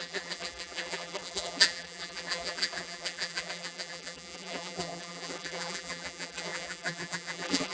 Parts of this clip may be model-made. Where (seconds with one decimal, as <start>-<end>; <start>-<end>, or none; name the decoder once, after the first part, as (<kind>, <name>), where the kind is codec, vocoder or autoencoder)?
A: 0.0-7.7 (vocoder, BigVGAN v2)